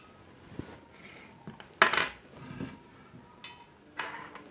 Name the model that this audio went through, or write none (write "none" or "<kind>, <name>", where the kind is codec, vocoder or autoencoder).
none